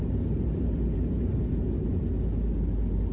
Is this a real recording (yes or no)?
yes